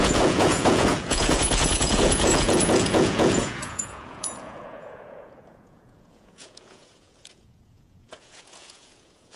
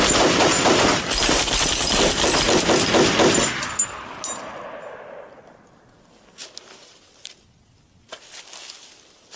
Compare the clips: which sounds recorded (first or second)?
second